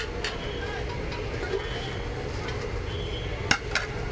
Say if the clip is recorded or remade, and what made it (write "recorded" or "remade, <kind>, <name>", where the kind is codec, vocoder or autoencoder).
recorded